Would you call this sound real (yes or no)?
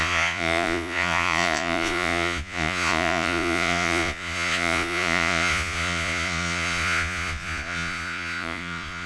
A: no